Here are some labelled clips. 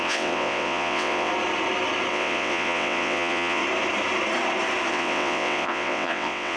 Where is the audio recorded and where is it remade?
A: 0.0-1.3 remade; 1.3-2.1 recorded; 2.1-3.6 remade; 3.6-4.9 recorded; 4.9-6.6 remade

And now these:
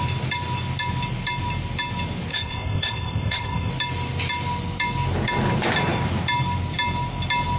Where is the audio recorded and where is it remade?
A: 0.0-2.3 recorded; 2.3-3.7 remade; 3.7-7.6 recorded

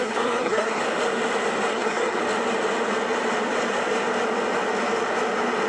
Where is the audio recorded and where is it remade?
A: 0.0-0.8 remade; 0.8-1.7 recorded; 1.7-2.2 remade; 2.2-5.7 recorded

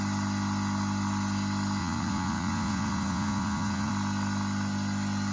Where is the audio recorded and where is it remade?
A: 0.0-1.8 recorded; 1.8-3.9 remade; 3.9-5.3 recorded

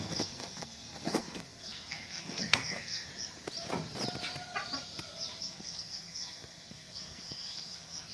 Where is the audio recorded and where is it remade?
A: 0.0-3.1 remade; 3.1-5.4 recorded; 5.4-8.1 remade

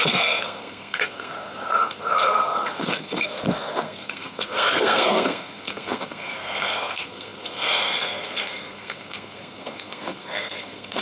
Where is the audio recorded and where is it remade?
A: 0.0-11.0 remade

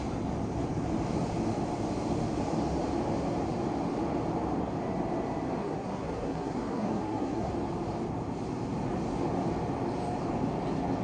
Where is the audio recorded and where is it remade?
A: 0.0-5.6 recorded; 5.6-7.5 remade; 7.5-11.0 recorded

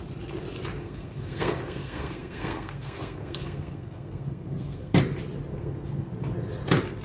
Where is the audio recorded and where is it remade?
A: 0.0-0.8 recorded; 0.8-5.0 remade; 5.0-5.5 recorded; 5.5-6.1 remade; 6.1-7.0 recorded